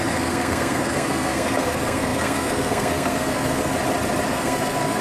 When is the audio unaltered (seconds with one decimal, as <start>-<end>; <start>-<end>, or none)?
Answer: 3.7-4.3